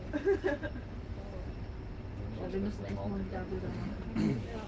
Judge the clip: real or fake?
real